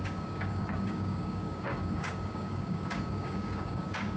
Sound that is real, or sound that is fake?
fake